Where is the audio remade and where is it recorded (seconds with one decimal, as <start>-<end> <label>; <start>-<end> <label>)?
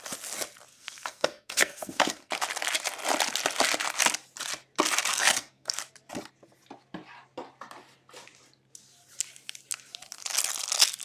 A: 0.0-0.7 recorded; 0.7-2.3 remade; 2.3-5.1 recorded; 5.1-5.8 remade; 5.8-11.0 recorded